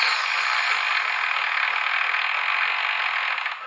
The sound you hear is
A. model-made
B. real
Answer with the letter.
B